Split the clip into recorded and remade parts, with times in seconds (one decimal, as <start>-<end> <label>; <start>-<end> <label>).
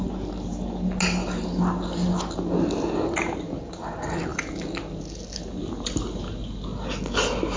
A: 0.0-7.6 recorded